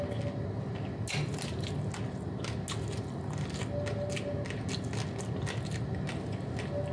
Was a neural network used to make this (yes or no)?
no